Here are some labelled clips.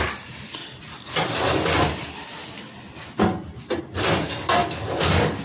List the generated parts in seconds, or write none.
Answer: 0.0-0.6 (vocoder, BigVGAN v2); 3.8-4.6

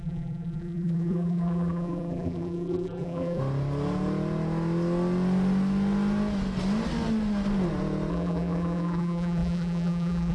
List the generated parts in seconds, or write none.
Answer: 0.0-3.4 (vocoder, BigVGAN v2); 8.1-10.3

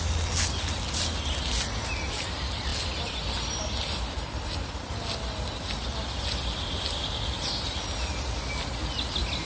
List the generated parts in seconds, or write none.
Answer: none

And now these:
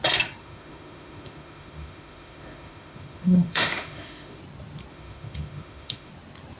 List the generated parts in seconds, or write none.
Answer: 0.4-4.4 (autoencoder, DAC-VAE); 4.9-6.1

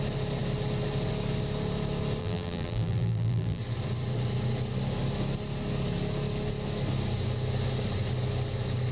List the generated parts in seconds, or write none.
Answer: 2.2-3.6 (vocoder, BigVGAN v2)